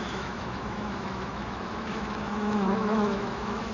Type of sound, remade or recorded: remade